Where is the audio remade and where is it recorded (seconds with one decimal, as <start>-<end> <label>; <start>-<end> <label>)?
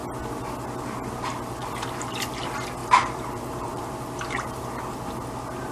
0.0-2.8 recorded; 2.8-5.1 remade; 5.1-5.7 recorded